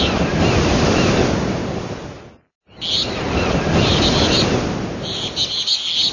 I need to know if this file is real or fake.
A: real